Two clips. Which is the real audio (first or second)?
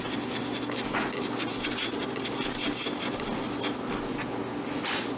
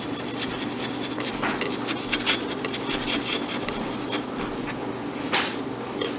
first